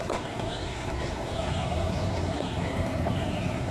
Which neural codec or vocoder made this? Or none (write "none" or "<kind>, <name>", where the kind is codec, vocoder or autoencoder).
codec, SNAC